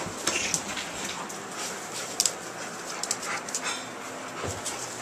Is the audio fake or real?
real